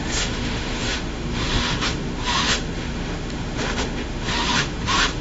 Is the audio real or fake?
fake